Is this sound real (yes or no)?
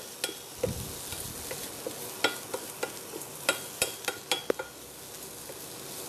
yes